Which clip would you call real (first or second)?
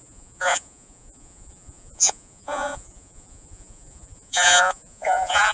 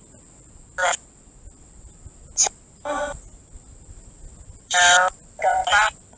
second